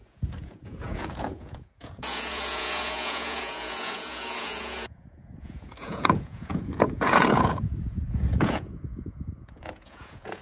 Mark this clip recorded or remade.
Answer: remade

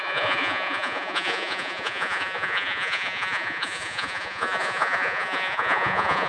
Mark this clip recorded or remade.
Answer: remade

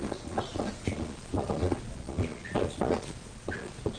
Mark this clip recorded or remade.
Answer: remade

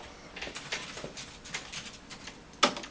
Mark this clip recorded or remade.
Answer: recorded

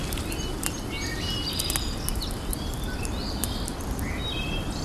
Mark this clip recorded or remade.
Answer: recorded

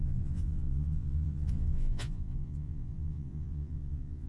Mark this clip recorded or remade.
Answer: remade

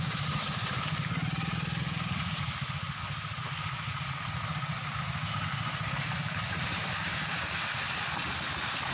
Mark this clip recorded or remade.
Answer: recorded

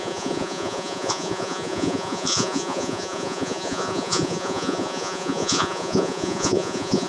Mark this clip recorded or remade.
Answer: remade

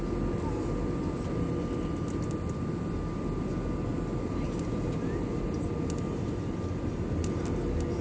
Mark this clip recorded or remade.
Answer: recorded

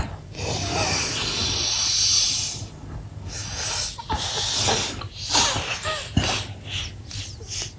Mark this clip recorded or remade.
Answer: recorded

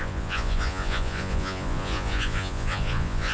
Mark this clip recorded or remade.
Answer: remade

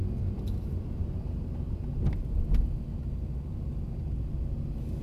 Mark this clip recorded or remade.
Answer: recorded